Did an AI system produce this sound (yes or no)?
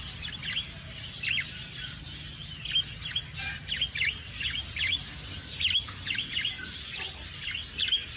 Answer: no